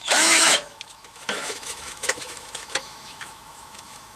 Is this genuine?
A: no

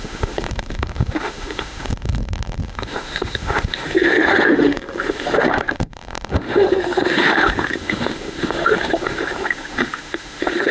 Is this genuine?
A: no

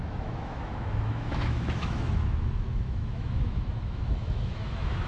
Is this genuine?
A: no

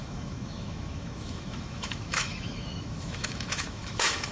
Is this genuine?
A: no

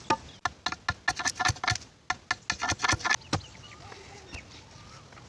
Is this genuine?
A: yes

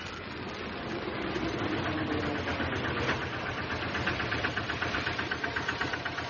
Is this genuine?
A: yes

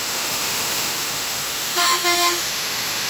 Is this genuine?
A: no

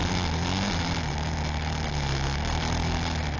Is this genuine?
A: yes